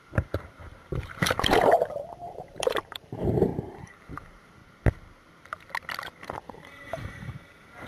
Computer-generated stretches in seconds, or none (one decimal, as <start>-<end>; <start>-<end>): 0.0-4.6; 6.2-7.9